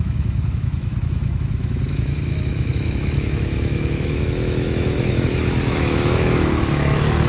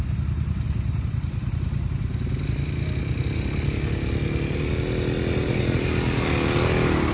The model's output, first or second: first